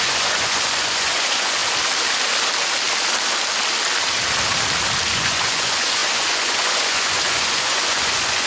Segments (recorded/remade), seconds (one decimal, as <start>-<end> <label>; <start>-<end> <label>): 0.0-1.6 remade; 1.6-5.1 recorded; 5.1-8.5 remade